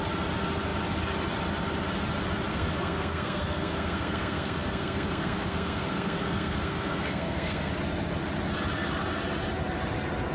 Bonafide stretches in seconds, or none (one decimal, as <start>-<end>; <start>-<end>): 0.0-2.5; 7.7-10.3